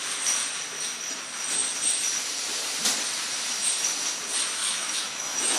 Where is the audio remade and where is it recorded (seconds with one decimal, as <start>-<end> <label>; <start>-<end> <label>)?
0.0-4.6 recorded; 4.6-5.6 remade